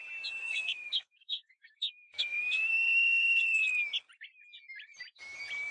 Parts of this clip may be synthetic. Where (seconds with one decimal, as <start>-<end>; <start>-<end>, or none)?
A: 0.4-3.8